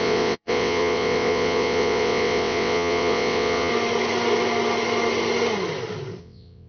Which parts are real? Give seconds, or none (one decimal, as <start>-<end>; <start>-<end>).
3.7-6.2